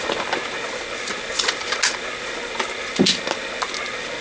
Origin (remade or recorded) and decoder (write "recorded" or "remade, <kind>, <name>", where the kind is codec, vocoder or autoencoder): recorded